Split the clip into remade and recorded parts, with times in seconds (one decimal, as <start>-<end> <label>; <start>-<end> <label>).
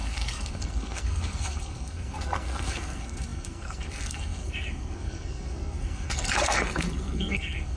0.0-7.8 remade